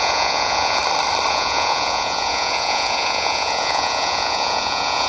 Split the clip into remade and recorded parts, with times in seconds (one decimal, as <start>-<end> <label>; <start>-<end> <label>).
0.0-0.8 remade; 0.8-1.3 recorded; 1.3-5.1 remade